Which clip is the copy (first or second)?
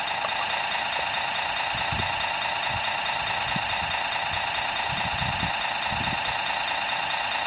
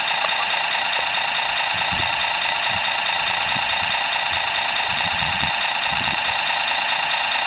second